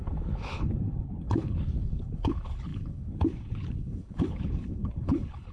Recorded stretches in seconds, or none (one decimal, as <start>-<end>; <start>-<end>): none